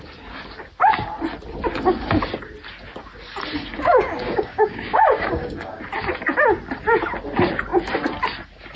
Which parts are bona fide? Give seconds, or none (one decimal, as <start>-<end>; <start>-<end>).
0.0-3.8; 5.8-8.8